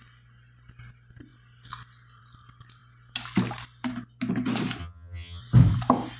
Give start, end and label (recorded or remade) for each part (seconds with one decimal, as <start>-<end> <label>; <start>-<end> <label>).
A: 0.0-4.8 recorded; 4.8-5.4 remade; 5.4-6.2 recorded